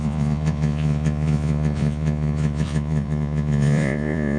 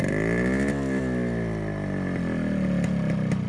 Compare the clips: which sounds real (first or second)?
second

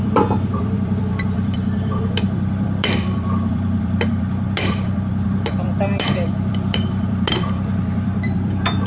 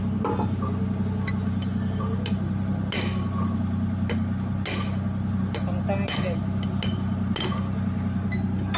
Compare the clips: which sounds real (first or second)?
second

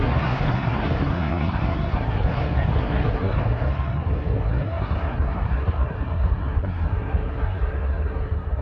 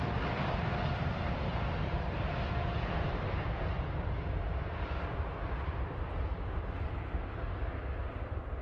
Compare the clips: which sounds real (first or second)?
second